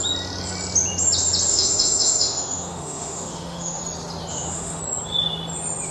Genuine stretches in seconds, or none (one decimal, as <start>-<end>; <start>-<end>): 0.0-1.5; 3.8-4.3; 4.8-5.9